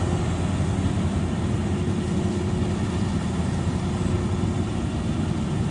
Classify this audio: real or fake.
real